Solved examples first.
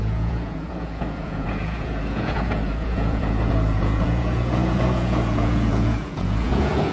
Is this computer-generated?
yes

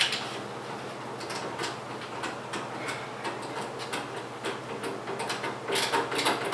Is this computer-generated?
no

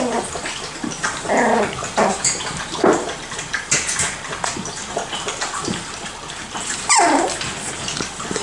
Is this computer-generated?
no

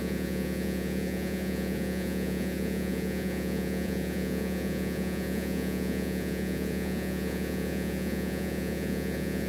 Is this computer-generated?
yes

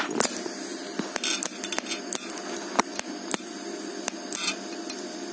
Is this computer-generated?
no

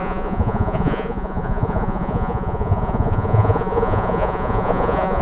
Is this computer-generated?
yes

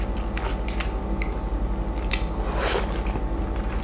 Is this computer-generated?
no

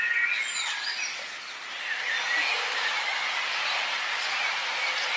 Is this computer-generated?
no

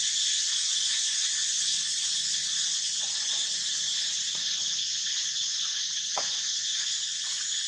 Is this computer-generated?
yes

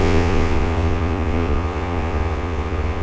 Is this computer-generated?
yes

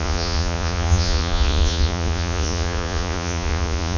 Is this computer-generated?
yes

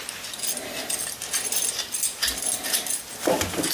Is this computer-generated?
no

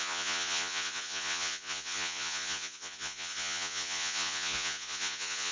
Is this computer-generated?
yes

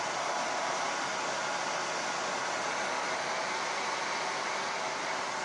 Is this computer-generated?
no